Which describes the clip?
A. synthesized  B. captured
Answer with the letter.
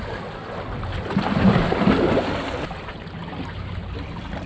B